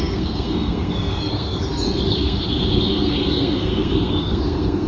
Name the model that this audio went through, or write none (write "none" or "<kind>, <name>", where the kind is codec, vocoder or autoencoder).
codec, SNAC